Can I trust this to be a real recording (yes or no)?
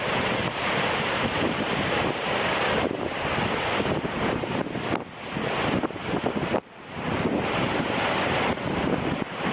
yes